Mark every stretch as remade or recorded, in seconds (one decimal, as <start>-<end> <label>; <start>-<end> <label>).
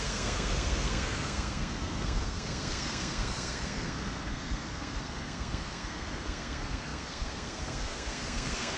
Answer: 0.0-8.8 remade